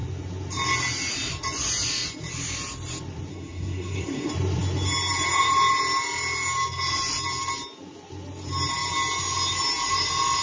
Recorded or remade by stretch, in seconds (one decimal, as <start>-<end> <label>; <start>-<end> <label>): 0.0-3.3 recorded; 3.3-4.3 remade; 4.3-10.4 recorded